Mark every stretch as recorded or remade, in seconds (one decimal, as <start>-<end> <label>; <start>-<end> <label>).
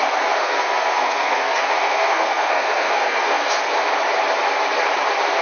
0.0-0.4 recorded; 0.4-3.6 remade; 3.6-5.4 recorded